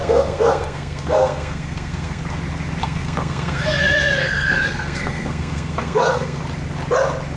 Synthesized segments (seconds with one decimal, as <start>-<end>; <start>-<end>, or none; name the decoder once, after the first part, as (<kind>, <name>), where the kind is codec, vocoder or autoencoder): 0.0-2.2 (codec, SNAC); 2.8-6.4